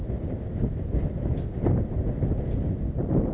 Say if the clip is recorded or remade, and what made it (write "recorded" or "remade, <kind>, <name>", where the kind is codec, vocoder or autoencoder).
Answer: recorded